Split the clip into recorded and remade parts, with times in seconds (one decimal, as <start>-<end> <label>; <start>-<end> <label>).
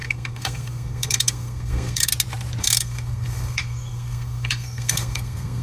0.0-2.1 remade; 2.1-2.6 recorded; 2.6-5.6 remade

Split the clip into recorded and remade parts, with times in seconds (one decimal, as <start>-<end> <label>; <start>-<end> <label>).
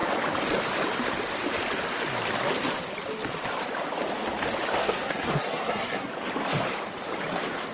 0.0-4.8 recorded; 4.8-6.1 remade; 6.1-7.7 recorded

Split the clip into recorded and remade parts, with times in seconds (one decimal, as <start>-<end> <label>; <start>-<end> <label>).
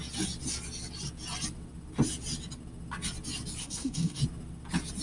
0.0-3.6 recorded; 3.6-4.2 remade; 4.2-5.0 recorded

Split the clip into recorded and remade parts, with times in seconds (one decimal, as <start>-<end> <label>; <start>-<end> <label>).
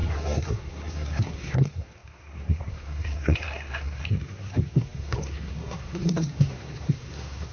0.0-7.5 remade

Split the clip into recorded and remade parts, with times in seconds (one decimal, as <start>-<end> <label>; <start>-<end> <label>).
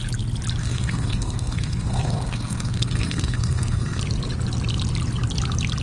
0.0-0.6 recorded; 0.6-4.0 remade; 4.0-5.8 recorded